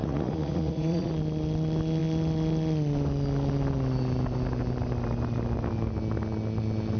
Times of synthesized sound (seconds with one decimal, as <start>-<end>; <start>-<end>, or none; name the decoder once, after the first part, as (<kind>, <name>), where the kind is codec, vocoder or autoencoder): 0.0-1.1 (vocoder, Vocos)

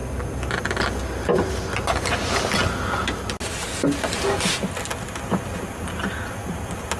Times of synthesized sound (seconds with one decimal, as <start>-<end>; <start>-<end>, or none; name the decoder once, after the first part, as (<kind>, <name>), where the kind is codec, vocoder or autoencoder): none

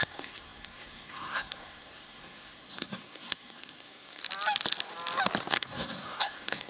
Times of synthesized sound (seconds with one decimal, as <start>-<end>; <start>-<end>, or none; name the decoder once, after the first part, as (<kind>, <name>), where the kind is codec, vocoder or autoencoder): 0.0-4.2 (codec, SNAC); 5.5-6.7